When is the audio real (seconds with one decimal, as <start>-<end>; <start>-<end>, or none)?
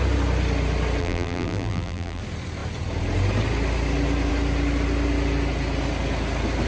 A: 0.0-1.0; 2.2-6.7